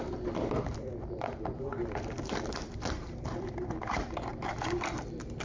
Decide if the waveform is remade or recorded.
remade